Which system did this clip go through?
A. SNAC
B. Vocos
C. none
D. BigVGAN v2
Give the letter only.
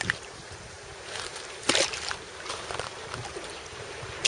D